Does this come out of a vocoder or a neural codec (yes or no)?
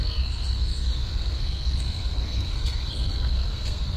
yes